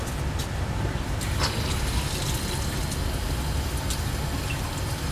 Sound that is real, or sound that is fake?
real